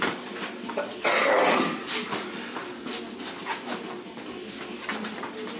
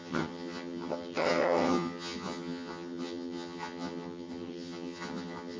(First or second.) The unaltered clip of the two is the first